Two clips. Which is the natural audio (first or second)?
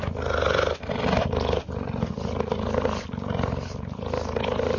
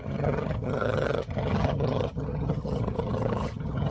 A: first